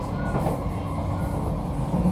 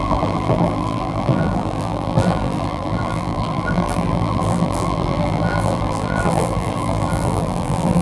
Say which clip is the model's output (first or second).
second